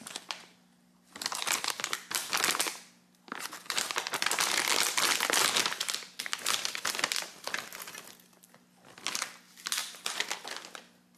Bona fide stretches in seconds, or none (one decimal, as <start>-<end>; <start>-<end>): 0.0-11.2